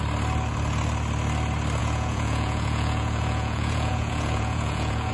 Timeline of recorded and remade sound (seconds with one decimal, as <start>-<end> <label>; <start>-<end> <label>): 0.0-1.8 recorded; 1.8-5.1 remade